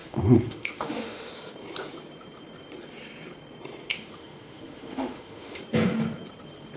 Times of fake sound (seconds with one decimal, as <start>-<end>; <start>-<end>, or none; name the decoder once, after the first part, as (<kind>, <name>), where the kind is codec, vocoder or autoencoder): 0.0-1.3 (autoencoder, DAC-VAE); 3.9-5.6